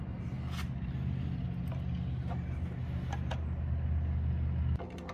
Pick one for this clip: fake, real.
real